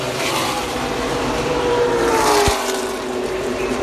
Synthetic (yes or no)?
yes